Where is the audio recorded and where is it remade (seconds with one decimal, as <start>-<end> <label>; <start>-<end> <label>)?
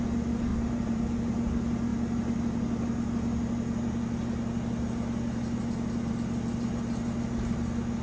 0.0-0.5 recorded; 0.5-1.0 remade; 1.0-8.0 recorded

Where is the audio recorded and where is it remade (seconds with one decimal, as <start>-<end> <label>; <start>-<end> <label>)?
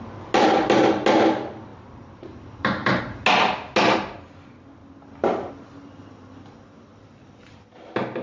0.0-1.7 recorded; 1.7-3.0 remade; 3.0-8.2 recorded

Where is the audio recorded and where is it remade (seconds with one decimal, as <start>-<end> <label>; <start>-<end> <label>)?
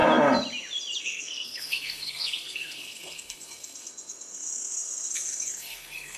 0.0-1.0 recorded; 1.0-6.2 remade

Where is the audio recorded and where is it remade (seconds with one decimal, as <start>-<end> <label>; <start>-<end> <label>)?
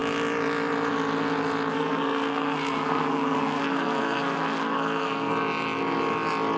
0.0-1.7 recorded; 1.7-5.3 remade; 5.3-6.6 recorded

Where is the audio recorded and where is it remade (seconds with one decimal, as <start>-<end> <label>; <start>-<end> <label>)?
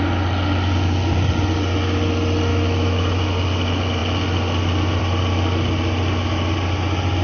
0.0-2.5 recorded; 2.5-3.2 remade; 3.2-7.2 recorded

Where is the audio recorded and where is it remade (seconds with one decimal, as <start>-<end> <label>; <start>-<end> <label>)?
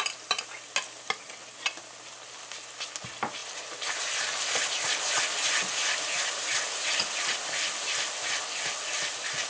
0.0-9.5 recorded